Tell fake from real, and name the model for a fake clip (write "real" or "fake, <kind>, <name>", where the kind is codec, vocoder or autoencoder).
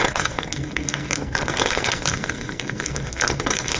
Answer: fake, codec, SNAC